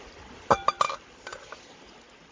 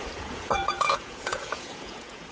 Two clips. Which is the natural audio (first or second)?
first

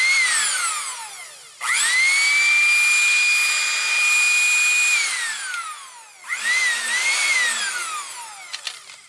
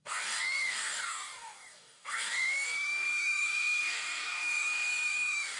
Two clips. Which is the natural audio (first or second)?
first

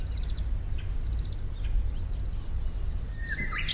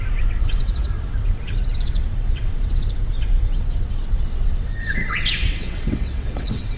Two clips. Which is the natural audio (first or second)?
first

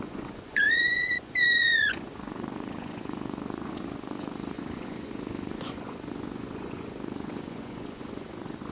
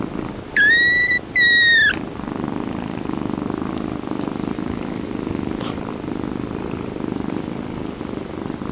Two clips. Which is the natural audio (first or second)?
second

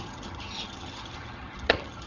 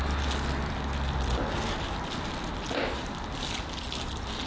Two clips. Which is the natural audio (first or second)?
second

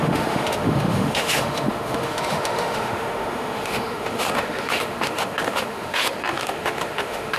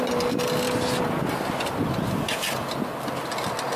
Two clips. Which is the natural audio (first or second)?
second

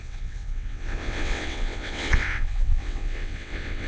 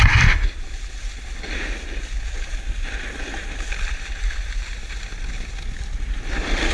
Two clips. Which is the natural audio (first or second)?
second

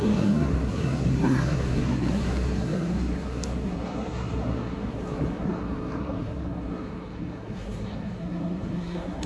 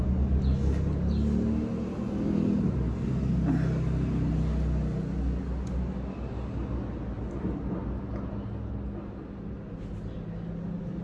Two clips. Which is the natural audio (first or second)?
second